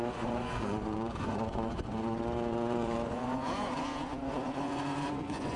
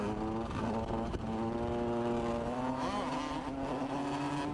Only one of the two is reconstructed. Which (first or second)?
first